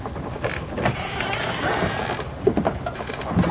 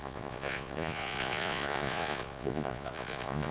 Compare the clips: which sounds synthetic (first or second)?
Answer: second